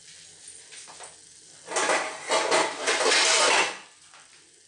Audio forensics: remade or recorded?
recorded